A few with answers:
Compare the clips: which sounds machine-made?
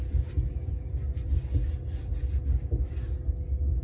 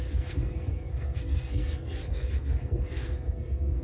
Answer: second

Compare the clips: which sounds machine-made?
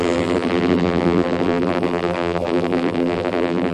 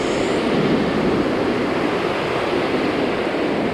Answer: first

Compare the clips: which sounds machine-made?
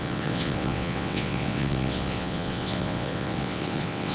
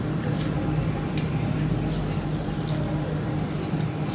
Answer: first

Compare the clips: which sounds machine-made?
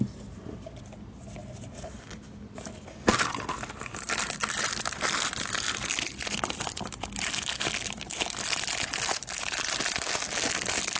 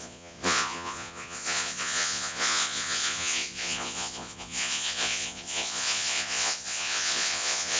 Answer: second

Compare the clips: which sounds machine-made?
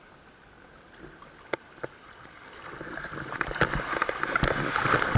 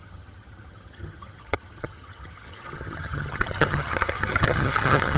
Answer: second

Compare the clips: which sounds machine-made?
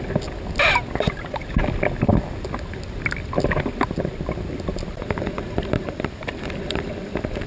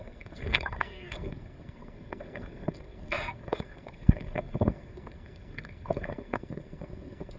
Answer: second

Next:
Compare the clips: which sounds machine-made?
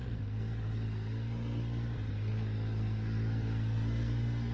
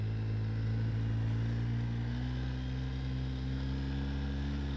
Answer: first